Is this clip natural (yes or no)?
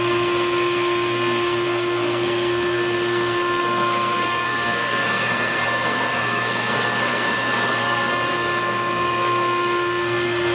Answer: no